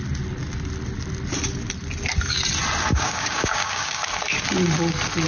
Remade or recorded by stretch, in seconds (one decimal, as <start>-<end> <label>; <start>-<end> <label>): 0.0-2.9 recorded; 2.9-4.1 remade; 4.1-5.3 recorded